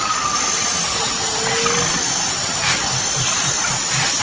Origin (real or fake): real